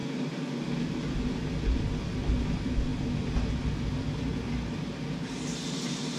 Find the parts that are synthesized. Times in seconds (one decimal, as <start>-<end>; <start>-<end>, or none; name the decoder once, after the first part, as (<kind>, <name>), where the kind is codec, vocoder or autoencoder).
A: none